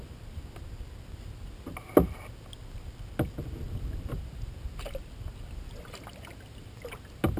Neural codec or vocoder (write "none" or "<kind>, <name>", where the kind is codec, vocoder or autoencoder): none